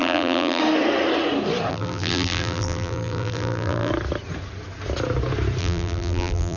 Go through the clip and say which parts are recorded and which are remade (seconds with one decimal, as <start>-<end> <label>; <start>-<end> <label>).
0.0-0.6 remade; 0.6-1.7 recorded; 1.7-3.9 remade; 3.9-5.6 recorded; 5.6-6.6 remade